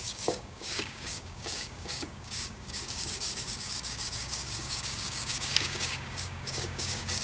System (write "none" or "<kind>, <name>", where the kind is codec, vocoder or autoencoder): codec, DAC